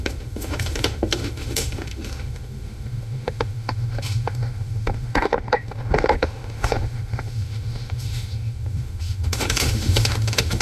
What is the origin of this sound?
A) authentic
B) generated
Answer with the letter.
B